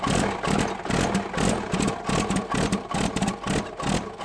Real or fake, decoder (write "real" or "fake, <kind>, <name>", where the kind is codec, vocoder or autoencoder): real